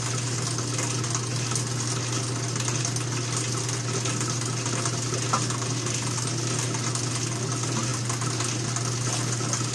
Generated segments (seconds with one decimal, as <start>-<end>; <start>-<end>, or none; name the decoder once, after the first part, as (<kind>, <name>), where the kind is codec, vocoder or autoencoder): none